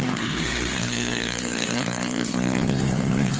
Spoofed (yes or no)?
yes